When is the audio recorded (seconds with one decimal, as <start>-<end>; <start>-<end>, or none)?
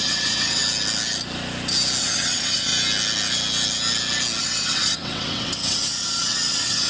0.6-2.0; 2.7-4.4